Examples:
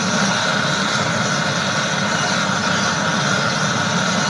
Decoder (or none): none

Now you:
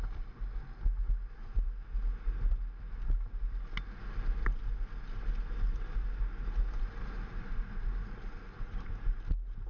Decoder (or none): none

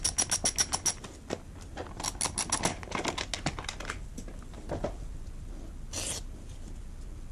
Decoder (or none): none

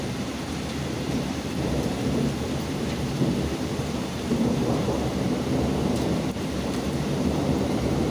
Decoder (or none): vocoder, BigVGAN v2